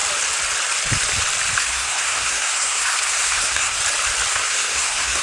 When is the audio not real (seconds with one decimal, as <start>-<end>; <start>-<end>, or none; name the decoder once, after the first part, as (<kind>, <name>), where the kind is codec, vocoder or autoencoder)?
1.6-3.8 (codec, SNAC); 4.3-5.2